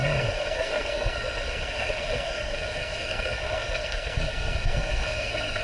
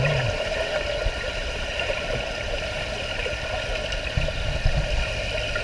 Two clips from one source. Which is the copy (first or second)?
first